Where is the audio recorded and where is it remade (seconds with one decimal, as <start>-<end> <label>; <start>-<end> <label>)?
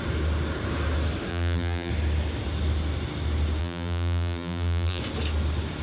0.0-1.3 recorded; 1.3-1.9 remade; 1.9-3.6 recorded; 3.6-5.0 remade; 5.0-5.8 recorded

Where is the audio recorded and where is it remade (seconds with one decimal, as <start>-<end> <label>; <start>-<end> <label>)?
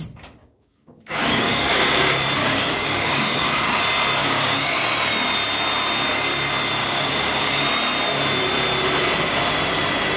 0.0-0.4 recorded; 0.4-2.0 remade; 2.0-2.4 recorded; 2.4-3.6 remade; 3.6-4.2 recorded; 4.2-4.8 remade; 4.8-6.8 recorded; 6.8-7.6 remade; 7.6-10.2 recorded